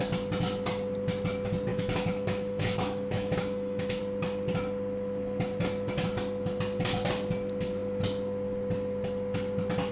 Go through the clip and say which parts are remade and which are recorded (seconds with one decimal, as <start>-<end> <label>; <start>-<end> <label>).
0.0-1.7 recorded; 1.7-4.0 remade; 4.0-9.9 recorded